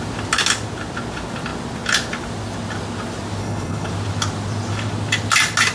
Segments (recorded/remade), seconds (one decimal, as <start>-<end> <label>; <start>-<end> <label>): 0.0-3.4 recorded; 3.4-3.9 remade; 3.9-5.7 recorded